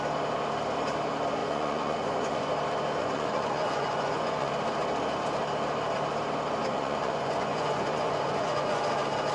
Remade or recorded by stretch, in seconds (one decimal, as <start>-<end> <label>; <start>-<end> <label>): 0.0-1.4 recorded; 1.4-2.5 remade; 2.5-3.0 recorded; 3.0-4.5 remade; 4.5-6.7 recorded; 6.7-8.8 remade; 8.8-9.3 recorded